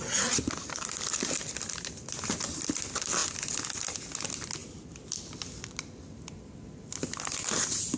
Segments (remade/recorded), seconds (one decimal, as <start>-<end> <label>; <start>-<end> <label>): 0.0-8.0 recorded